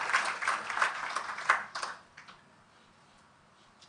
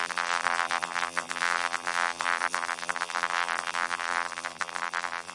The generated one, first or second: second